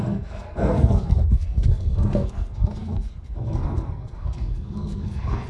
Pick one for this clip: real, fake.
fake